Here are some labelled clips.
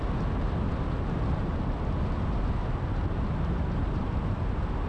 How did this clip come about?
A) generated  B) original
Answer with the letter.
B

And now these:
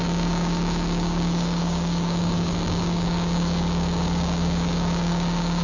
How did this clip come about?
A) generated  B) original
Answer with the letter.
A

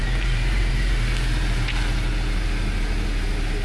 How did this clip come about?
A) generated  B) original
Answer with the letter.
B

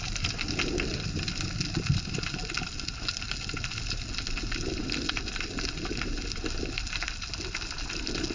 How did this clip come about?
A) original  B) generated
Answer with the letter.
A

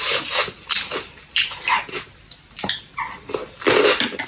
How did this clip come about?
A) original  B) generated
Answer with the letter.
A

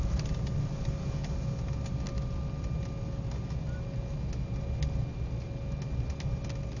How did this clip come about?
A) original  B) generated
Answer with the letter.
A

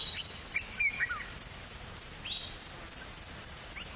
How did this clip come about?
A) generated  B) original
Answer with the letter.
B